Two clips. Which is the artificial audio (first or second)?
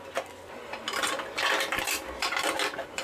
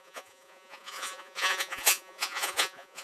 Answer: second